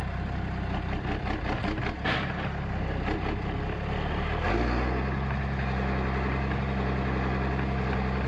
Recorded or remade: recorded